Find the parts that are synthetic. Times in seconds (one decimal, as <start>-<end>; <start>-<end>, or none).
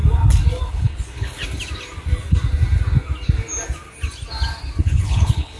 0.7-1.4; 4.8-5.6